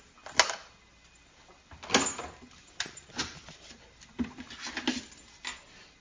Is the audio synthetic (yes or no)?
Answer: no